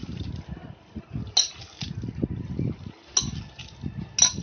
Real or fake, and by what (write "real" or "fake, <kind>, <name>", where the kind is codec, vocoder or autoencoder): real